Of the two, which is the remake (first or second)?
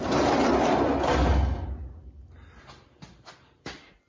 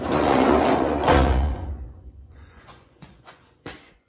second